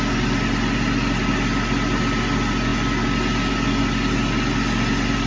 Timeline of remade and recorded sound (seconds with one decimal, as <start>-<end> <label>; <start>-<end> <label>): 0.0-5.3 recorded